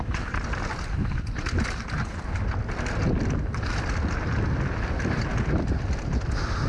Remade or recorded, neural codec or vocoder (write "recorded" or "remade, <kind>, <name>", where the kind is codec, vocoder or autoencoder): recorded